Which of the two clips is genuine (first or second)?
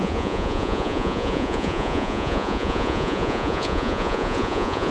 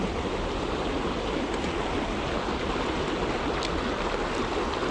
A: second